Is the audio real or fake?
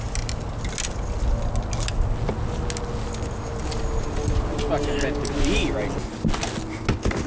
real